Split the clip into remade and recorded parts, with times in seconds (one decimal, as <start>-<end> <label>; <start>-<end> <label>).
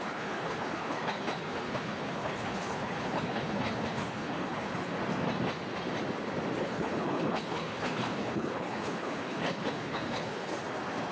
0.0-5.0 remade; 5.0-6.6 recorded; 6.6-10.5 remade; 10.5-11.1 recorded